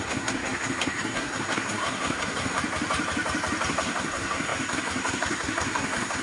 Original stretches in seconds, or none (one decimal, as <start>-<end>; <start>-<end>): 2.6-3.7